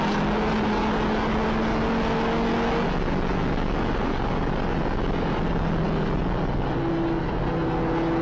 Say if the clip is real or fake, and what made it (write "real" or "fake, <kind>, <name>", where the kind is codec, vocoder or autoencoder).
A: real